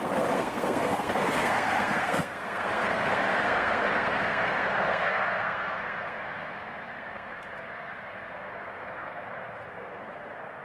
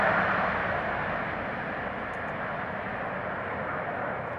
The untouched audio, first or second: second